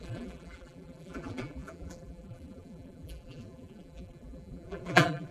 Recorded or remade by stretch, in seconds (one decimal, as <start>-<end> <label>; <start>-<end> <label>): 0.0-5.3 remade